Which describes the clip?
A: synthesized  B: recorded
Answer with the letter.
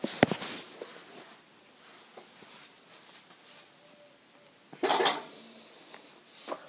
B